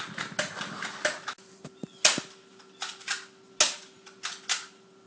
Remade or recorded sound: recorded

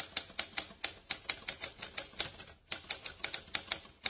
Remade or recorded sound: recorded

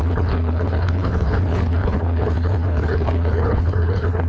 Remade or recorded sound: remade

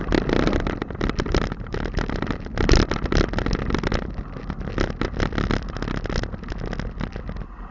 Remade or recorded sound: recorded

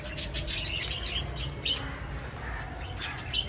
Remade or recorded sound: recorded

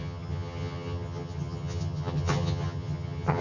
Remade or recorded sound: remade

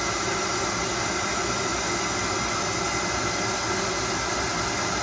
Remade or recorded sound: recorded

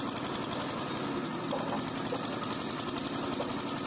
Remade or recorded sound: recorded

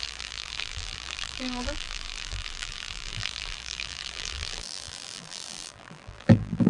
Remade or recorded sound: remade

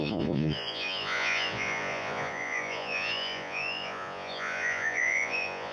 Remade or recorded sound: remade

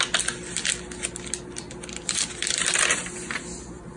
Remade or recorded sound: recorded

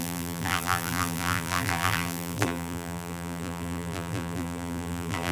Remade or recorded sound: remade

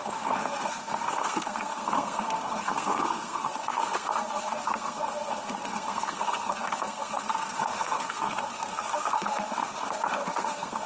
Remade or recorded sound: remade